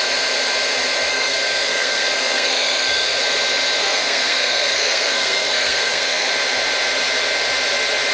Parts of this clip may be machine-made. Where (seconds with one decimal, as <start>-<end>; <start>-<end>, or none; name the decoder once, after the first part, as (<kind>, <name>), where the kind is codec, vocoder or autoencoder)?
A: 1.1-3.2 (codec, SNAC); 3.8-6.3